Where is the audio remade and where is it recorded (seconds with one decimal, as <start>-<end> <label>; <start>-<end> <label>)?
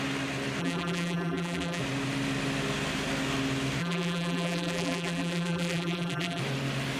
0.0-0.6 recorded; 0.6-1.8 remade; 1.8-3.8 recorded; 3.8-6.4 remade; 6.4-7.0 recorded